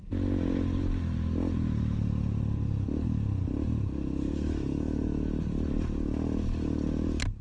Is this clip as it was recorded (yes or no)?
yes